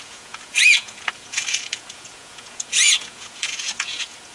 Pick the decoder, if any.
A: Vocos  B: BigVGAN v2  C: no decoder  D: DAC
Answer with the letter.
A